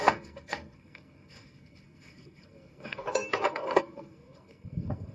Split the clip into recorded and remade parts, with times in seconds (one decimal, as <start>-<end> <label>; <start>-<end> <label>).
0.0-5.1 remade

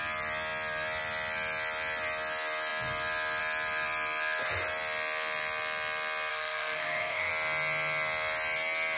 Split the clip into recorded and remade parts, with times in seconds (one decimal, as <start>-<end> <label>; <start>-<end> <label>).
0.0-6.3 recorded; 6.3-7.3 remade; 7.3-9.0 recorded

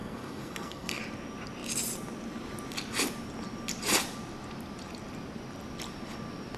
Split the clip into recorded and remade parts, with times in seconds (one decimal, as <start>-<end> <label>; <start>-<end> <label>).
0.0-1.0 remade; 1.0-6.6 recorded